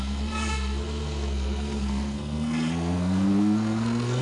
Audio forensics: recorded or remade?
remade